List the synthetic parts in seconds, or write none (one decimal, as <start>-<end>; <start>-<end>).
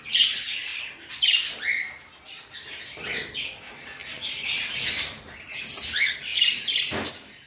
none